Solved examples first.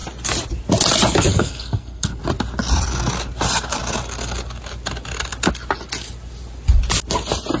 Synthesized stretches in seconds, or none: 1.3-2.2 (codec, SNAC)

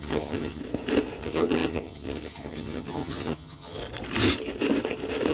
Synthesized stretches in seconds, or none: 0.0-0.6 (vocoder, HiFi-GAN); 1.2-3.8

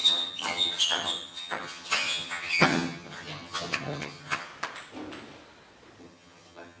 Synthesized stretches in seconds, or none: 0.0-4.5 (vocoder, HiFi-GAN); 6.0-6.8

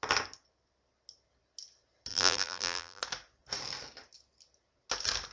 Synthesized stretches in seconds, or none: 2.1-3.0 (vocoder, BigVGAN v2)

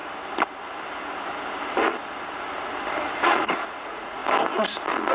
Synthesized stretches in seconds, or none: 3.1-4.2 (vocoder, Vocos)

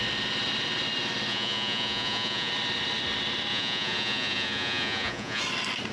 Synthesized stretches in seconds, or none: 1.3-2.5 (vocoder, Vocos); 3.5-5.4